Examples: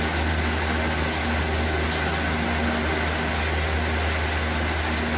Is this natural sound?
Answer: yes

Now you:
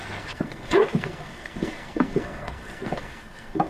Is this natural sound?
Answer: no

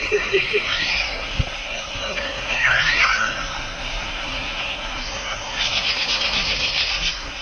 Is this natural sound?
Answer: no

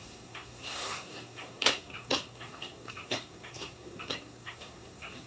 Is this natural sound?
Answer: no